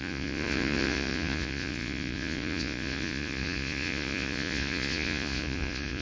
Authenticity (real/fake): fake